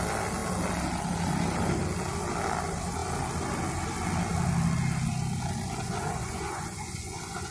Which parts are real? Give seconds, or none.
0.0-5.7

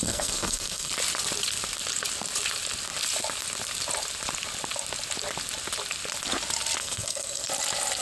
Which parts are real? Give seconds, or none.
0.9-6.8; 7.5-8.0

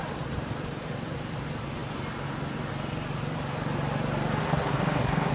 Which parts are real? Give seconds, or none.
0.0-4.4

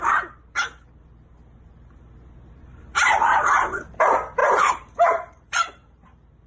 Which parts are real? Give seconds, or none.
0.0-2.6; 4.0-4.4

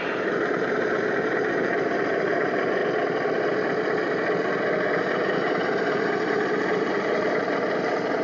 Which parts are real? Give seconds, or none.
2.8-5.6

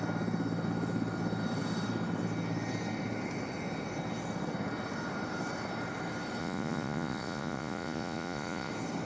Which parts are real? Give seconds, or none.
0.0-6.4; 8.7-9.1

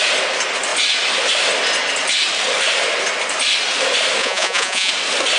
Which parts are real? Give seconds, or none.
0.0-4.2; 4.9-5.4

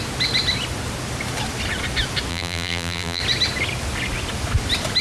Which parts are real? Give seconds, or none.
0.0-2.3; 3.2-5.0